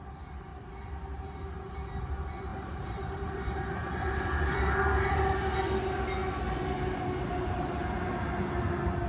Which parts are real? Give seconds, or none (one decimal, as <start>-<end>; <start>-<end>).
0.0-0.5; 1.7-2.5; 5.5-9.1